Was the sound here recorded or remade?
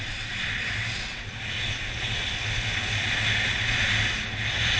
recorded